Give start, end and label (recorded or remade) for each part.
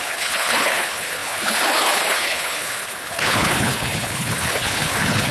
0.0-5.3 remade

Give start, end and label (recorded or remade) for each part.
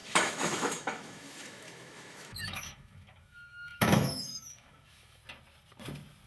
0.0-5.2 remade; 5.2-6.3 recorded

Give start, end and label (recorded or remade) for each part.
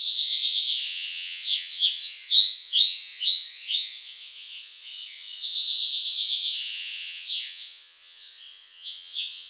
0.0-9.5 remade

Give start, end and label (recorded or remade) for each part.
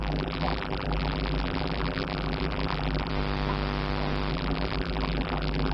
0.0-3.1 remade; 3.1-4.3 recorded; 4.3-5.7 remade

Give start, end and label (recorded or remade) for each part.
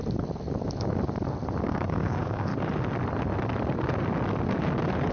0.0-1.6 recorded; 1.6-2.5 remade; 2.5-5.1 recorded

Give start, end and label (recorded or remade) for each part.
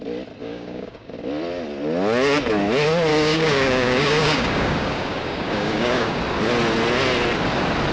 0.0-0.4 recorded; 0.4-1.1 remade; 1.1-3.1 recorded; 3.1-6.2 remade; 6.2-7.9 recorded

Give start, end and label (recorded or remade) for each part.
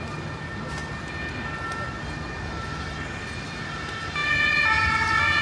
0.0-5.4 recorded